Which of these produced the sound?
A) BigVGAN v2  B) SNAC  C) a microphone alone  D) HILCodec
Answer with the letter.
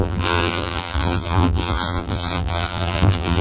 A